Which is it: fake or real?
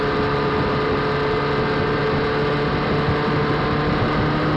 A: real